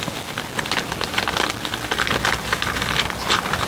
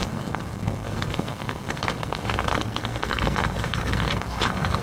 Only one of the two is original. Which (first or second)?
first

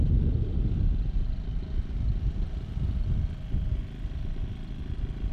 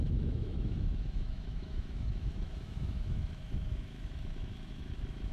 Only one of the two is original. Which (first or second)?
first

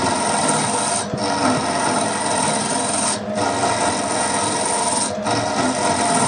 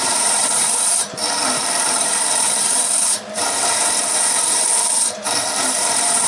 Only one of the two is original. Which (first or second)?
first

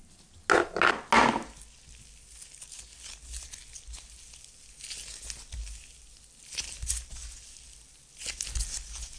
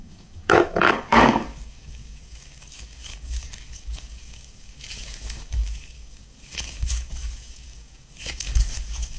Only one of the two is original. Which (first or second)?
first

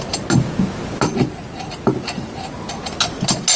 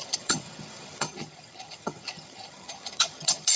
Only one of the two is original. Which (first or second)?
first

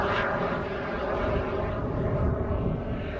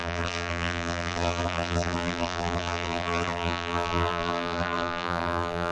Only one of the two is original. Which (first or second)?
first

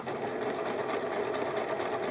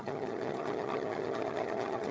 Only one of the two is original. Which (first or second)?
first